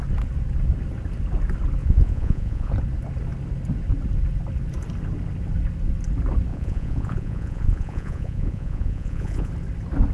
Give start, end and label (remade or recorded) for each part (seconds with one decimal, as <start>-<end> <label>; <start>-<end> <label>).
0.0-1.8 recorded; 1.8-2.7 remade; 2.7-6.5 recorded; 6.5-9.5 remade; 9.5-10.1 recorded